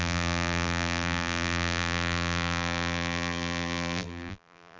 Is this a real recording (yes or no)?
no